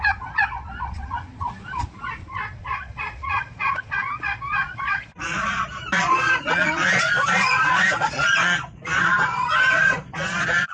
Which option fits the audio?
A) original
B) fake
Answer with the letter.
B